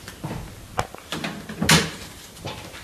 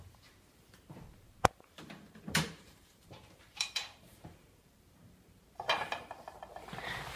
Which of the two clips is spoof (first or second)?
second